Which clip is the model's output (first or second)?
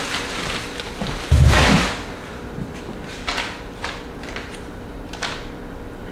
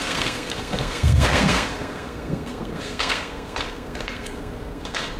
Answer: second